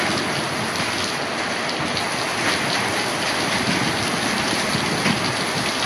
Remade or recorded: recorded